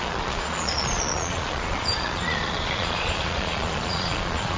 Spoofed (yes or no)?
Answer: yes